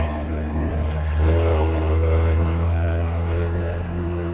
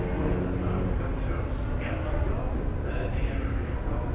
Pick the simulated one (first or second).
first